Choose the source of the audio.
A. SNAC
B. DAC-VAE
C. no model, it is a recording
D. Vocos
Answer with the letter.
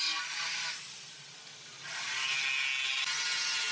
C